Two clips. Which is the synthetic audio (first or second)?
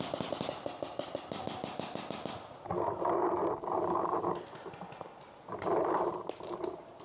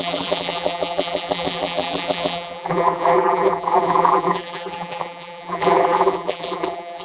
second